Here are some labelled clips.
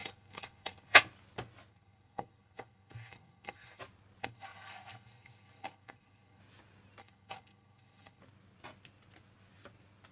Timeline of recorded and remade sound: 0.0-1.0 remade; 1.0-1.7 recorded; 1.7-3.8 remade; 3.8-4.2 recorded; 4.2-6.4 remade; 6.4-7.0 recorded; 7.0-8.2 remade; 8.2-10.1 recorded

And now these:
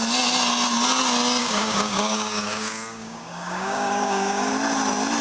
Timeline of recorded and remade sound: 0.0-1.4 recorded; 1.4-4.5 remade; 4.5-5.2 recorded

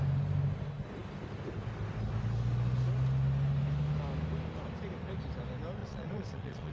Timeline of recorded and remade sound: 0.0-5.8 recorded; 5.8-6.7 remade

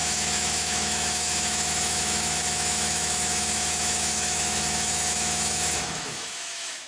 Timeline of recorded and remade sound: 0.0-6.9 remade

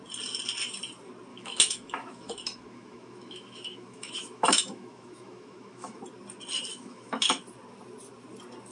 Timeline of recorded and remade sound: 0.0-1.3 recorded; 1.3-6.0 remade; 6.0-6.7 recorded; 6.7-7.4 remade; 7.4-8.7 recorded